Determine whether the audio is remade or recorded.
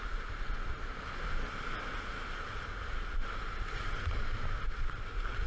recorded